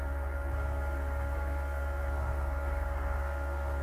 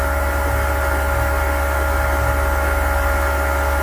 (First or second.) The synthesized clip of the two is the first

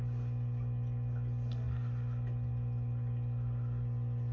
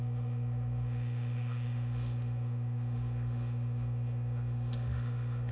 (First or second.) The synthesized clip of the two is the second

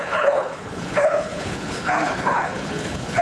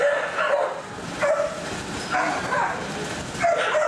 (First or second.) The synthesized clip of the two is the first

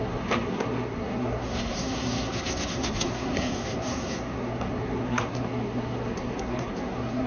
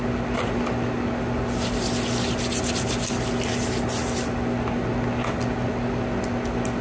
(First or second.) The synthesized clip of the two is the first